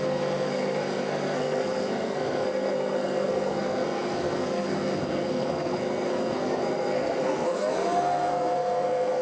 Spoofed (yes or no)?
yes